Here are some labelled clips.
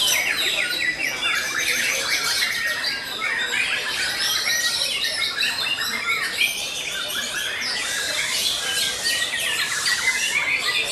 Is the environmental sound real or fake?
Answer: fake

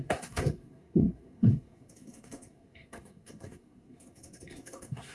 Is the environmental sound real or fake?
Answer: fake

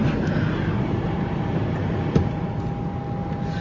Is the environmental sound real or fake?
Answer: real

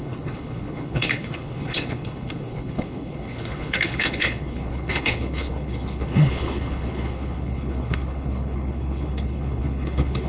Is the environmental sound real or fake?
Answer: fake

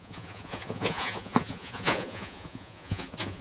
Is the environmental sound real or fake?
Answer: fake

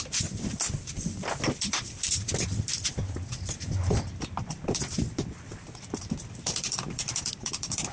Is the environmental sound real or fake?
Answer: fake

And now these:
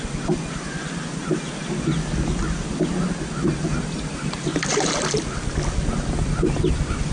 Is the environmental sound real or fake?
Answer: real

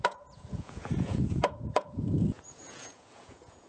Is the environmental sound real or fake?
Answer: fake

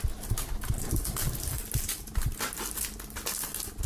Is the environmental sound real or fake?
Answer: real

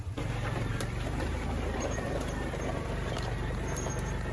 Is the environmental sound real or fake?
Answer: fake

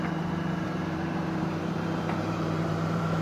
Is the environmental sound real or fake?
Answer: fake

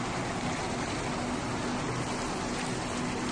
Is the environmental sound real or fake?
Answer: real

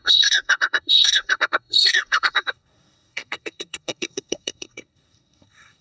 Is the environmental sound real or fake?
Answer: fake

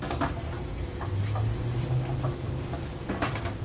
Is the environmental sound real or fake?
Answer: real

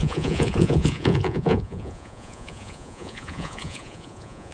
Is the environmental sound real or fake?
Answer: fake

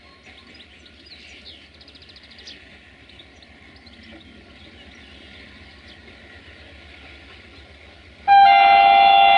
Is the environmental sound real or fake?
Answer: real